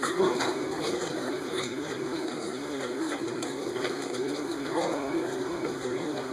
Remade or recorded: remade